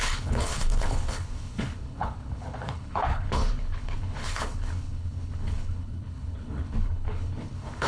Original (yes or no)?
no